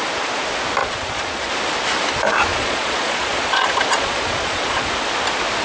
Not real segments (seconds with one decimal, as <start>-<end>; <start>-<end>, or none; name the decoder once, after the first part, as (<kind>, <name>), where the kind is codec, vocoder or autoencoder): 0.8-1.5 (vocoder, Vocos); 2.5-4.9